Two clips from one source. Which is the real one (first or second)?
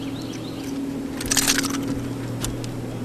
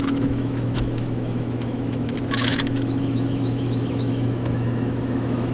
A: first